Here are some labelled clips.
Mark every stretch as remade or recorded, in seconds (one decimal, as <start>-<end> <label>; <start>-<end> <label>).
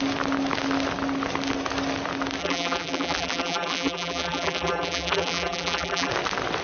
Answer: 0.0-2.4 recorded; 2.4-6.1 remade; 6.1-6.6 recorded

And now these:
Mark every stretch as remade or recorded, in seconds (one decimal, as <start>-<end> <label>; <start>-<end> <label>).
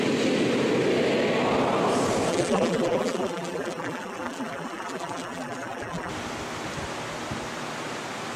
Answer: 0.0-2.3 recorded; 2.3-6.1 remade; 6.1-8.4 recorded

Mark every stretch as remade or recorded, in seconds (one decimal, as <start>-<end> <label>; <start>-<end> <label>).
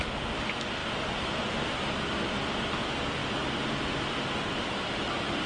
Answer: 0.0-0.8 recorded; 0.8-2.7 remade; 2.7-5.5 recorded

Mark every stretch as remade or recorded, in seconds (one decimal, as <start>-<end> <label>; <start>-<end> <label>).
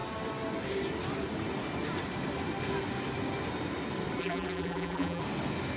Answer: 0.0-4.2 recorded; 4.2-5.2 remade; 5.2-5.8 recorded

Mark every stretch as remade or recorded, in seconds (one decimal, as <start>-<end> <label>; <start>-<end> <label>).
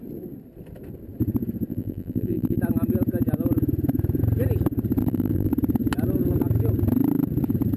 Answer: 0.0-1.7 recorded; 1.7-2.6 remade; 2.6-5.0 recorded; 5.0-5.5 remade; 5.5-7.8 recorded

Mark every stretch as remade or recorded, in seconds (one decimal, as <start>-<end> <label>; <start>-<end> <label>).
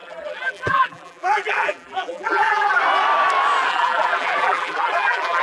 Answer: 0.0-2.8 remade; 2.8-3.7 recorded; 3.7-5.4 remade